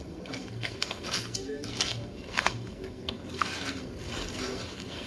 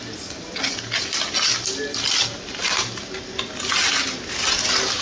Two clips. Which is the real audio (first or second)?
second